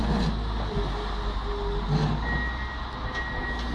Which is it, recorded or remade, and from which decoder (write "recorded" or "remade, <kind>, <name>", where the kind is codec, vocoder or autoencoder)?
recorded